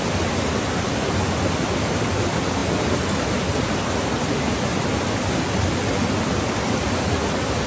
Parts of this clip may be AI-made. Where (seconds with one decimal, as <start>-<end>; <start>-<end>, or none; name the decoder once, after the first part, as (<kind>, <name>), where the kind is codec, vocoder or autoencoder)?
none

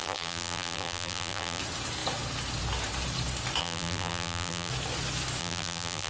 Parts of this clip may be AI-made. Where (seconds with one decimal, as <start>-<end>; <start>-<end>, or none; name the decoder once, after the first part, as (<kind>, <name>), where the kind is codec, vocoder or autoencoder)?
0.0-1.6 (vocoder, BigVGAN v2); 3.6-4.7; 5.4-6.1

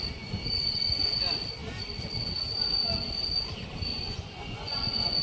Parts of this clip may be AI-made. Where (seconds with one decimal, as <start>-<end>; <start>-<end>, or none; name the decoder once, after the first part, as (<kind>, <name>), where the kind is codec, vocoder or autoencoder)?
3.9-5.2 (vocoder, Vocos)

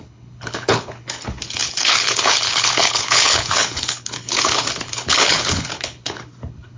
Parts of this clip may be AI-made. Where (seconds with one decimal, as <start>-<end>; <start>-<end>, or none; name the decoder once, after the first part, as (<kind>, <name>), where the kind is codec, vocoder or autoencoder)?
0.0-6.8 (codec, HILCodec)

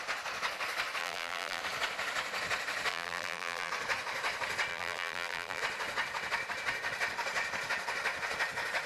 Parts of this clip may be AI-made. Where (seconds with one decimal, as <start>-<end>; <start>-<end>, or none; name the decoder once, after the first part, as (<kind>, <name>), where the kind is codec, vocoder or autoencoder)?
1.0-1.6 (vocoder, BigVGAN v2); 2.9-3.7; 4.7-5.6

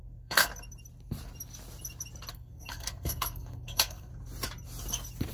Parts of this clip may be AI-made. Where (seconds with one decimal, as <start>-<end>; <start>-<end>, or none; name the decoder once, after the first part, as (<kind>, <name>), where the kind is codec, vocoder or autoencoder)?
0.0-0.5 (codec, SNAC); 2.3-4.1

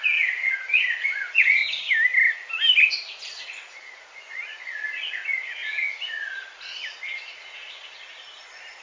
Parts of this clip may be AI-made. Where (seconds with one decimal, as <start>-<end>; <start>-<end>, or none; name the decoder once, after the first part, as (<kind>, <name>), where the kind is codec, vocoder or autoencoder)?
0.0-1.6 (vocoder, Vocos); 3.4-8.8

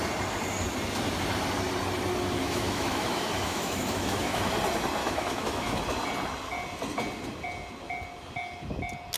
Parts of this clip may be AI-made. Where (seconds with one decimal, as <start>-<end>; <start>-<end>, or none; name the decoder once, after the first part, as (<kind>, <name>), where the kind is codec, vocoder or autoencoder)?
2.4-4.4 (autoencoder, DAC-VAE); 5.0-5.8